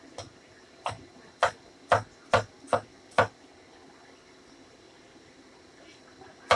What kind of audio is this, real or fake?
real